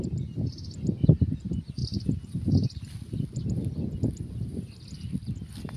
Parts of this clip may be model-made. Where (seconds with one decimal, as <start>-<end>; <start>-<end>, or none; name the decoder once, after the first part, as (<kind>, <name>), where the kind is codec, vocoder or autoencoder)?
none